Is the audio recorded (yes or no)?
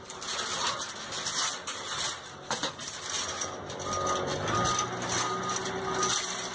yes